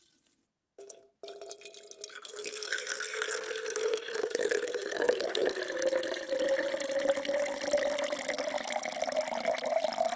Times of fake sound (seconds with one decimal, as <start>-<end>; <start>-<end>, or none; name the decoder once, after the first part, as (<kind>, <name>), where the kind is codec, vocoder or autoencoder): 0.5-1.1 (codec, SNAC); 2.1-5.6

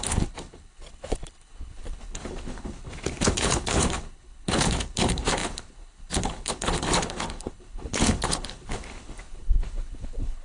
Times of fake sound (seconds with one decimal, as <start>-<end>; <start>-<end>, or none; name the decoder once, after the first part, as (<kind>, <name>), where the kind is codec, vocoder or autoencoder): 0.0-10.4 (codec, HILCodec)

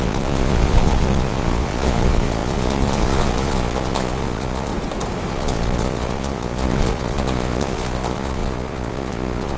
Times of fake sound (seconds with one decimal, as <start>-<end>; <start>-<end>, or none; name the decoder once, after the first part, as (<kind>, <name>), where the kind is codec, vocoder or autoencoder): 0.0-4.7 (vocoder, Vocos); 5.3-9.6

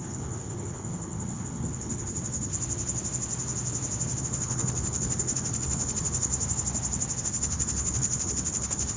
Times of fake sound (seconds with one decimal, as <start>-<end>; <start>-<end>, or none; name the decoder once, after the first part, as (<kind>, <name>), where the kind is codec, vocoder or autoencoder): 0.0-2.5 (codec, HILCodec); 4.2-6.3; 7.2-9.0